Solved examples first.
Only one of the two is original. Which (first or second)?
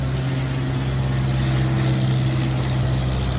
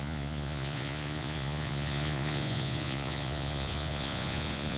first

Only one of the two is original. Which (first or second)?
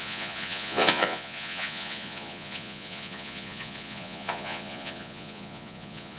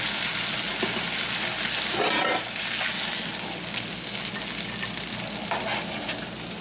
second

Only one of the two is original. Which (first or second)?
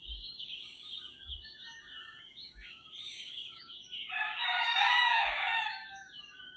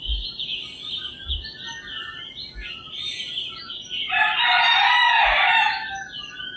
second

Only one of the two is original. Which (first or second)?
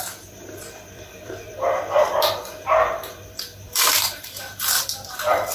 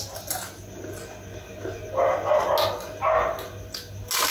second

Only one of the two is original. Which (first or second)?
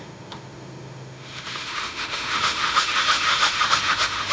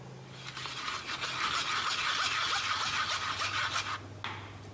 second